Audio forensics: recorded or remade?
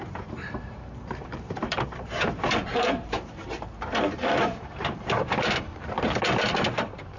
remade